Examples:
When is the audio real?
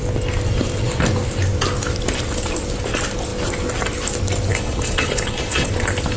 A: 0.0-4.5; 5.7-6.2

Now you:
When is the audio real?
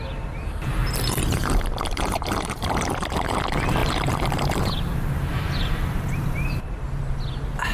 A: 0.0-0.8; 3.3-3.8; 6.7-7.7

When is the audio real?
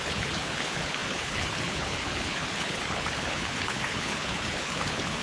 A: none